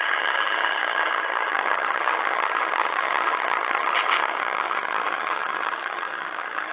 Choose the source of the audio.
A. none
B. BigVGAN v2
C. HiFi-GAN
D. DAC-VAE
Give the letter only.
C